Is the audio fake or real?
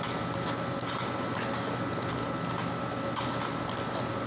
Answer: real